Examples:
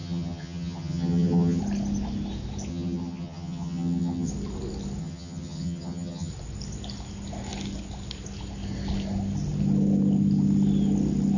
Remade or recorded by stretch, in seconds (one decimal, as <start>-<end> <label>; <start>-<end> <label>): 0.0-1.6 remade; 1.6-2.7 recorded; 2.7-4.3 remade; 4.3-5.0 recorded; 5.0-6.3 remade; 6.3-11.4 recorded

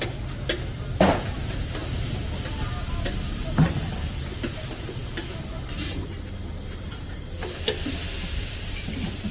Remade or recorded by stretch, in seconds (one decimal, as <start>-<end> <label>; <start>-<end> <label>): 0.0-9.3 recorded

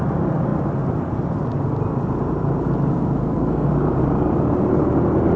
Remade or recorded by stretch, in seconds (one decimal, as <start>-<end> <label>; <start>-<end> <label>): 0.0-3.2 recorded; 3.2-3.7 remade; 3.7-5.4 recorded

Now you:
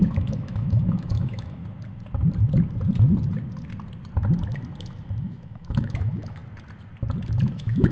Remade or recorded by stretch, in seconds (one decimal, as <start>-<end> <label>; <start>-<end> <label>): 0.0-1.6 remade; 1.6-5.2 recorded; 5.2-6.4 remade; 6.4-7.5 recorded; 7.5-7.9 remade

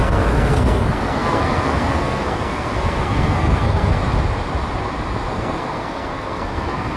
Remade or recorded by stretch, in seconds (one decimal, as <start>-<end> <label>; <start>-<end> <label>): 0.0-4.0 remade; 4.0-5.3 recorded; 5.3-7.0 remade

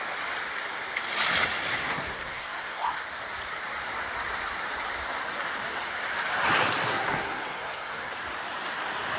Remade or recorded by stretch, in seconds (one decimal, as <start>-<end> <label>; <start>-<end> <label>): 0.0-1.8 recorded; 1.8-3.0 remade; 3.0-6.9 recorded; 6.9-8.1 remade; 8.1-9.2 recorded